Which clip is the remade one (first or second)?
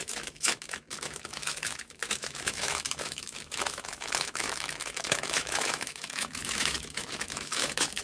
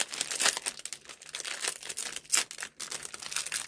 first